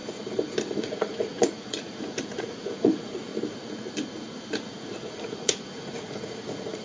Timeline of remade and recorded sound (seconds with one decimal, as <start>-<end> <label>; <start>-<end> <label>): 0.0-0.8 recorded; 0.8-3.3 remade; 3.3-4.7 recorded; 4.7-6.8 remade